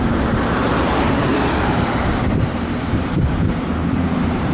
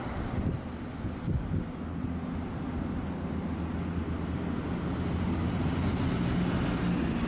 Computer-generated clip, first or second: first